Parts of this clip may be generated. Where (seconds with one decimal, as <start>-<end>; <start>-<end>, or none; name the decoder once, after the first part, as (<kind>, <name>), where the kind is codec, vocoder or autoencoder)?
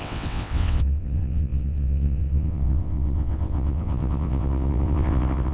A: 0.0-5.5 (vocoder, WaveNeXt)